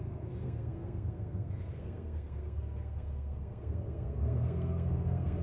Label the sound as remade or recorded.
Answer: remade